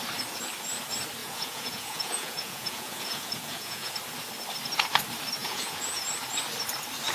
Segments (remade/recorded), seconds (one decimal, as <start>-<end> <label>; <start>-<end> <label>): 0.0-1.2 recorded; 1.2-3.9 remade; 3.9-5.4 recorded; 5.4-6.0 remade; 6.0-7.1 recorded